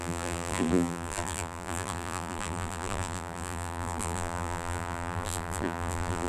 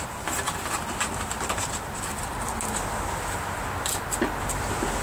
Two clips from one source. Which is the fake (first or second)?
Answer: first